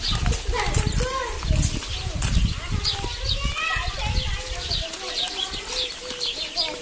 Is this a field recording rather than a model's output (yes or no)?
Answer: yes